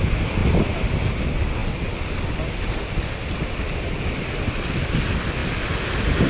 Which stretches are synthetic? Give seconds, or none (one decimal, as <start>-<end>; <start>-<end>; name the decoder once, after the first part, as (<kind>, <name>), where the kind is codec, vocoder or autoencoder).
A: none